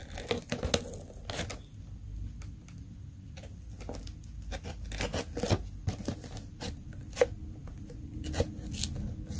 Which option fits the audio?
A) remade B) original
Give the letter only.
B